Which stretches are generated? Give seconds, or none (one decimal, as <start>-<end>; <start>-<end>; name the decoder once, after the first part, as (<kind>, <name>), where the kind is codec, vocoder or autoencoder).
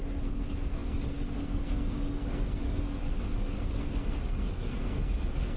0.0-5.6 (codec, SNAC)